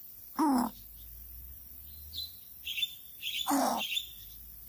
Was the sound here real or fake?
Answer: real